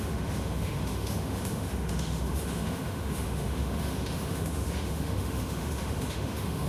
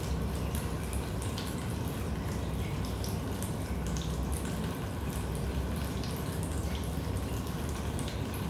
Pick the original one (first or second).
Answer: second